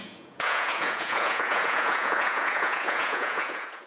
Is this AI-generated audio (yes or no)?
yes